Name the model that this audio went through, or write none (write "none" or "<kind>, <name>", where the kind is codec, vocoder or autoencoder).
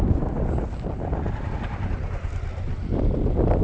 none